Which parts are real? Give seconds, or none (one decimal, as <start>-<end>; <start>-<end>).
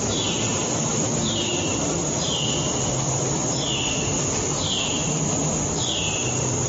0.0-0.6; 4.6-6.7